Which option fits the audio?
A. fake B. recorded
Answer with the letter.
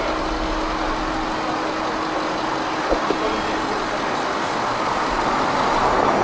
B